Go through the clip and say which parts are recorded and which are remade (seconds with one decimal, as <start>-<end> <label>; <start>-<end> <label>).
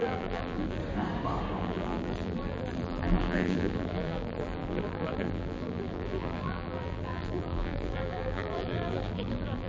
0.0-0.8 remade; 0.8-1.6 recorded; 1.6-9.7 remade